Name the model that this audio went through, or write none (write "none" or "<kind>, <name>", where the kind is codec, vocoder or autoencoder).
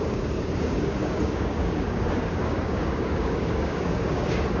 codec, DAC